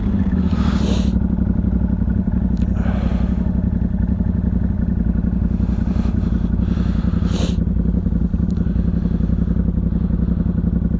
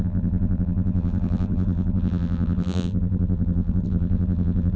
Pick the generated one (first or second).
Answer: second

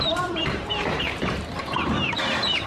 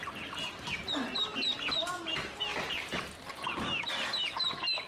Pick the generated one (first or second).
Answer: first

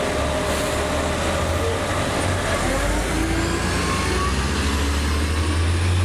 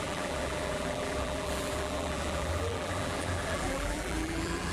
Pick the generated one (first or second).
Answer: second